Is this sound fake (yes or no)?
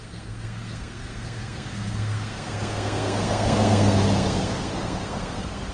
yes